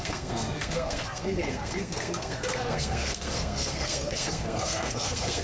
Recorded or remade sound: remade